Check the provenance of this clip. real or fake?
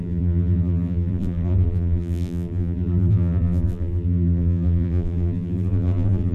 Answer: fake